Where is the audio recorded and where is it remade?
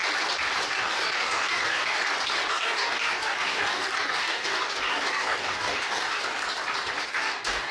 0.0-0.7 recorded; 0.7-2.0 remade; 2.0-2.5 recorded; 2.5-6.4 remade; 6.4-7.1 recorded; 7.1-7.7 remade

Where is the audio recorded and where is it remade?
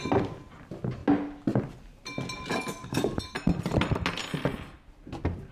0.0-2.5 recorded; 2.5-3.2 remade; 3.2-5.5 recorded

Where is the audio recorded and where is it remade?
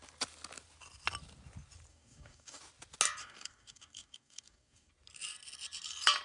0.0-1.9 recorded; 1.9-2.6 remade; 2.6-3.2 recorded; 3.2-4.9 remade; 4.9-6.2 recorded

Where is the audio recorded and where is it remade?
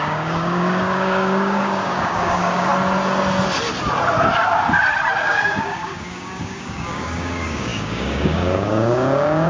0.0-2.7 remade; 2.7-5.2 recorded; 5.2-9.5 remade